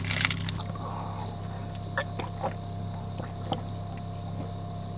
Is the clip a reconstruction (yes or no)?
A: no